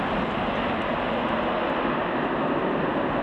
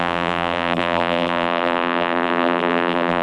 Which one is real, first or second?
first